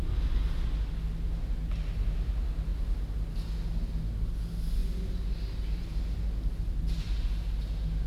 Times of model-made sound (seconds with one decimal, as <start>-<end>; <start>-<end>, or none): none